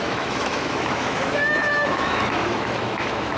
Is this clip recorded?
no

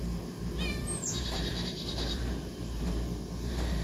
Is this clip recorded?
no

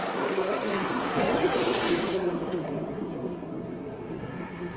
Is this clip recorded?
no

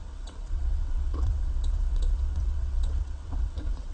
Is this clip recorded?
no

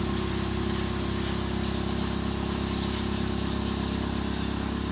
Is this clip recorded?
yes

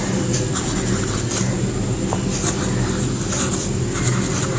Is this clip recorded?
yes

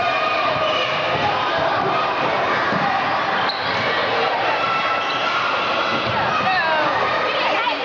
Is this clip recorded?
yes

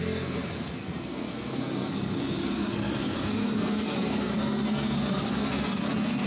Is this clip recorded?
no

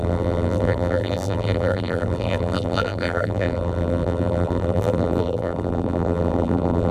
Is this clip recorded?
no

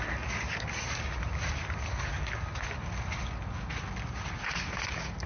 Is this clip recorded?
yes